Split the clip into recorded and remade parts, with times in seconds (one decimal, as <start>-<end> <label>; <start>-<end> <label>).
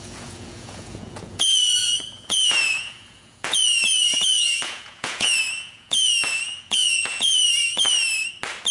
0.0-7.4 remade; 7.4-8.7 recorded